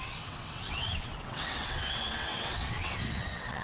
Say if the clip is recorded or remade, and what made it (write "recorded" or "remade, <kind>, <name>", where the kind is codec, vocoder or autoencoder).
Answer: remade, vocoder, WaveNeXt